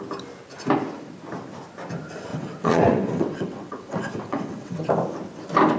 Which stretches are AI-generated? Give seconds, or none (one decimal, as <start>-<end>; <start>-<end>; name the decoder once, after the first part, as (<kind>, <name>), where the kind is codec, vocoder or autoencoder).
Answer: 2.3-4.9 (vocoder, WaveNeXt)